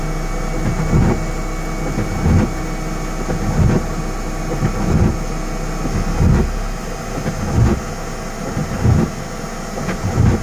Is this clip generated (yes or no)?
no